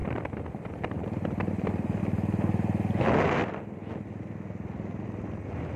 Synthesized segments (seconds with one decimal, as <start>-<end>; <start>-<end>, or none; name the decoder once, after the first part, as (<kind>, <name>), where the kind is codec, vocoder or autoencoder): 0.0-2.0 (vocoder, BigVGAN v2); 3.4-3.9